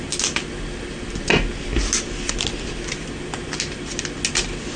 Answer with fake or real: real